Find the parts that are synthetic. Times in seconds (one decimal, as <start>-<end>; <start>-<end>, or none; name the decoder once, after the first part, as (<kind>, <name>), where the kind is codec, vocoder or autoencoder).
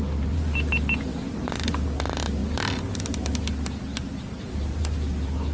none